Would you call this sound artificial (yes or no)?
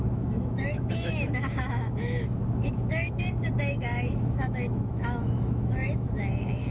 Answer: yes